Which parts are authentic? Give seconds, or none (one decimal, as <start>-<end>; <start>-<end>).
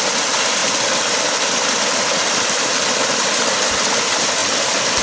0.0-5.0